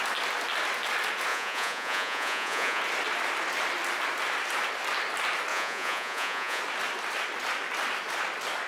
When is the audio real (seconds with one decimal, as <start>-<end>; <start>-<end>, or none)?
0.0-1.3; 2.8-5.5; 6.6-8.7